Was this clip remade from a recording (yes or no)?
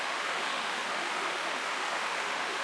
yes